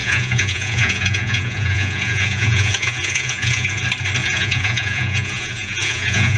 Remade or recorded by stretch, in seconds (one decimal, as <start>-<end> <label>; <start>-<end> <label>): 0.0-3.8 remade; 3.8-4.2 recorded; 4.2-6.4 remade